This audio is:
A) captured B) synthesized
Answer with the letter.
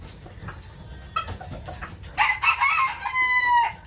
A